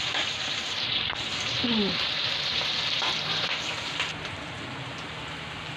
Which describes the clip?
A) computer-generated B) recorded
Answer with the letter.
A